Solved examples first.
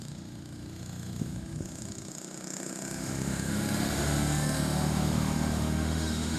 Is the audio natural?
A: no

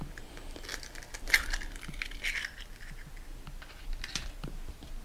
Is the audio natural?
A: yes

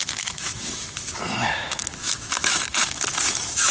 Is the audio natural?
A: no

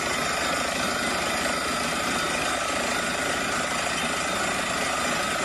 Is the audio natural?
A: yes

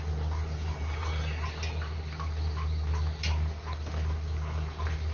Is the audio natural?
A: yes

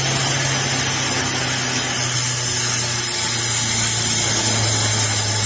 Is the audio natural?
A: yes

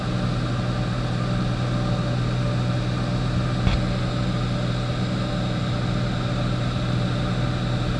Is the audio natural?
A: yes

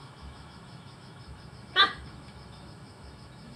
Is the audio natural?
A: no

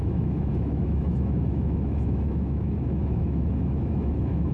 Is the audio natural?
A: no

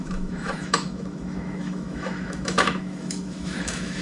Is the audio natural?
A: no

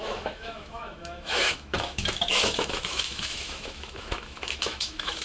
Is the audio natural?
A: no